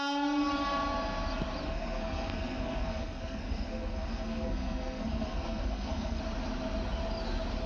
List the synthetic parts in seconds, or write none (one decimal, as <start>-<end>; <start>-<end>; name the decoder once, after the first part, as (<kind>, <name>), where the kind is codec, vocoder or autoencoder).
1.6-6.2 (codec, SNAC)